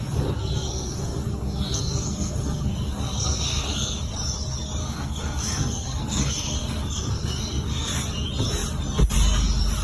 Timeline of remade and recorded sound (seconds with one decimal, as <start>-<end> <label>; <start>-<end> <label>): 0.0-0.4 recorded; 0.4-4.1 remade; 4.1-4.8 recorded; 4.8-7.9 remade; 7.9-9.8 recorded